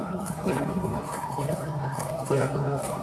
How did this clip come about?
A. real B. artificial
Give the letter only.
B